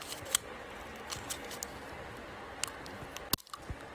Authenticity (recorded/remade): recorded